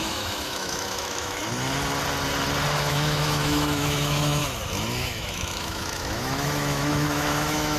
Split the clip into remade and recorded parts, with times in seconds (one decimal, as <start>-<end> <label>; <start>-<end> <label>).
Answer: 0.0-1.4 remade; 1.4-2.9 recorded; 2.9-4.4 remade; 4.4-5.0 recorded; 5.0-7.8 remade